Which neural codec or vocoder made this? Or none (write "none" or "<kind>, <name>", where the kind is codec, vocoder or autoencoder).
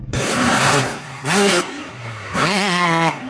codec, SNAC